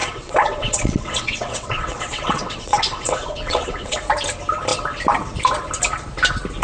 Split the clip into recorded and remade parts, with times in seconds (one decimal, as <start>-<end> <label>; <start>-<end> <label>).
0.0-4.0 remade; 4.0-6.6 recorded